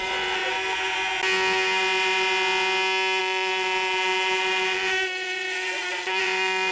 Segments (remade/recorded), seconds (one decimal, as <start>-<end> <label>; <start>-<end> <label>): 0.0-0.4 remade; 0.4-3.2 recorded; 3.2-6.7 remade